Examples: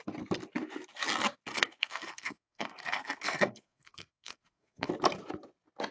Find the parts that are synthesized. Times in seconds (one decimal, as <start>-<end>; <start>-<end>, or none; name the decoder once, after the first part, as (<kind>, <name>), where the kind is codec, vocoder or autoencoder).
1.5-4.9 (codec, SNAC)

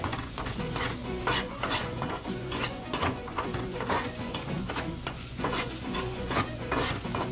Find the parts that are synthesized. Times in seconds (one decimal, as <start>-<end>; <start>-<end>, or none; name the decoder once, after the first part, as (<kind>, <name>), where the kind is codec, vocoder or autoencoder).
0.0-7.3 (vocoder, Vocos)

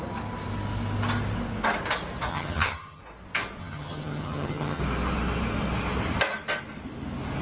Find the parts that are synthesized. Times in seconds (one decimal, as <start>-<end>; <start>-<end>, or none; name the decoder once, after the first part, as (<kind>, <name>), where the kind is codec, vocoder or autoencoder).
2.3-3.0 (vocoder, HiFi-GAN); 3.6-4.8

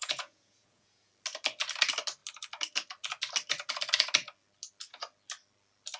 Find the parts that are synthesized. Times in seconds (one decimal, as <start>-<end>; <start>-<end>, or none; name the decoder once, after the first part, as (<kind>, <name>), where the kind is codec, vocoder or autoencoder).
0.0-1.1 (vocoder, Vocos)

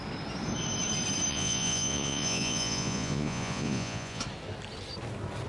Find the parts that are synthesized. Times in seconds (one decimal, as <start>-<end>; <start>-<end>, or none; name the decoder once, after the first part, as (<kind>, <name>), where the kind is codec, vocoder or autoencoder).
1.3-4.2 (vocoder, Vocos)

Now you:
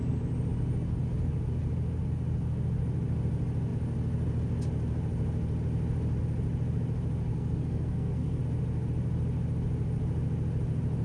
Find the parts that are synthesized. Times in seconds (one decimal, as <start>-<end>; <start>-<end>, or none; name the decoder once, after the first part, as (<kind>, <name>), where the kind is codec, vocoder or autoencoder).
7.3-8.4 (codec, SNAC)

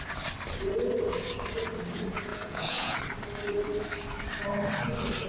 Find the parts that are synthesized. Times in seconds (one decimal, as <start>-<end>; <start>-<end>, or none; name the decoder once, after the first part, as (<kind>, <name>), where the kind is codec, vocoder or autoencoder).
2.3-3.0 (vocoder, Vocos)